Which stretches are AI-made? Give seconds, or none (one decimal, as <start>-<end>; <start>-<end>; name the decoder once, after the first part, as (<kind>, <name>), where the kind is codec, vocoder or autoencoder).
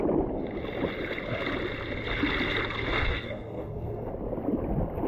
2.9-4.1 (codec, SNAC)